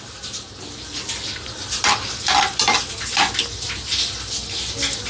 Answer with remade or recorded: recorded